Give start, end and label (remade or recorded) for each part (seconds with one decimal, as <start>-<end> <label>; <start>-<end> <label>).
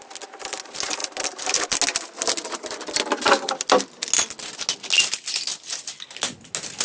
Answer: 0.0-6.8 recorded